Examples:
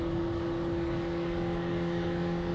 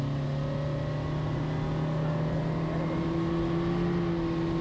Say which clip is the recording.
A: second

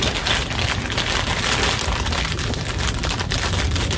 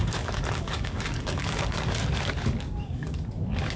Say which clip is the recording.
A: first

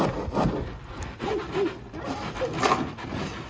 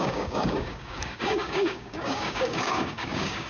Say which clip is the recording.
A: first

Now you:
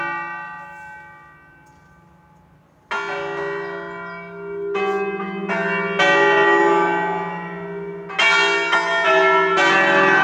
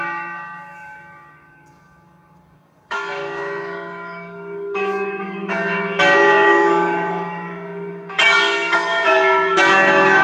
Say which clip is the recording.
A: first